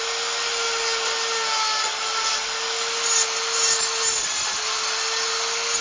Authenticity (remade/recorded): recorded